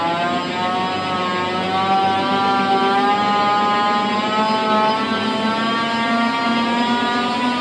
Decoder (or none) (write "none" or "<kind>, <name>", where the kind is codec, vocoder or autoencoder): none